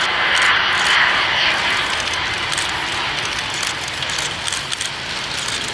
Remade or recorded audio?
recorded